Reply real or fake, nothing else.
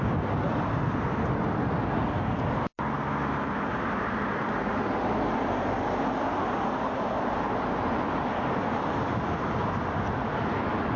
real